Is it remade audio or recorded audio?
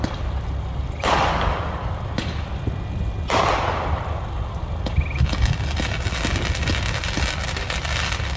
recorded